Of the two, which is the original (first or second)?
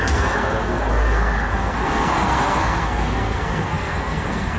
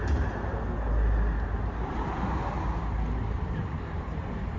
second